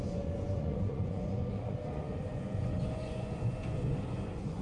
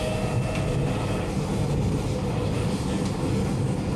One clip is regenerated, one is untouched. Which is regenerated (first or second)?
first